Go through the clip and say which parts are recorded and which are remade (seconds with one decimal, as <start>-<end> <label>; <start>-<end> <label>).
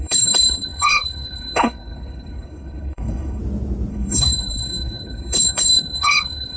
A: 0.0-3.4 remade; 3.4-3.9 recorded; 3.9-6.6 remade